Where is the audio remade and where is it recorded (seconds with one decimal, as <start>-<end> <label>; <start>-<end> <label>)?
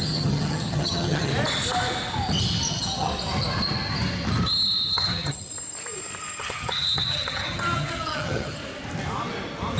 0.0-1.3 remade; 1.3-2.7 recorded; 2.7-3.1 remade; 3.1-4.9 recorded; 4.9-5.5 remade; 5.5-6.4 recorded; 6.4-8.6 remade; 8.6-9.8 recorded